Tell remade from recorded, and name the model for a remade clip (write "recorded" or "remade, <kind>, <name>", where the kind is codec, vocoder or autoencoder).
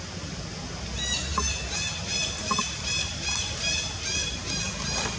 recorded